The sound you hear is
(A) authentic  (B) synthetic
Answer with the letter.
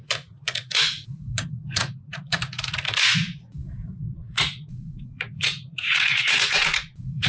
B